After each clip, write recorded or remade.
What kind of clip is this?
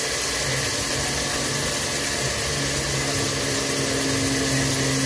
recorded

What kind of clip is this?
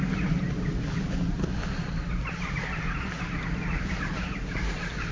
recorded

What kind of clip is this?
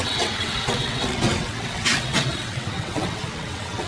remade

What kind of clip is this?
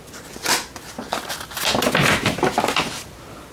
recorded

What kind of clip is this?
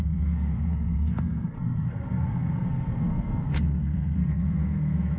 remade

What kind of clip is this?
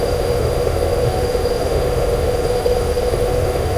remade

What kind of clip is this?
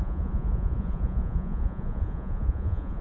remade